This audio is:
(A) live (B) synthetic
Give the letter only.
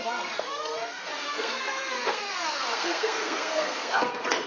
B